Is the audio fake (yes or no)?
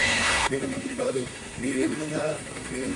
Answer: yes